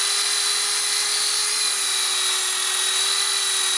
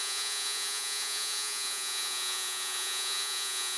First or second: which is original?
first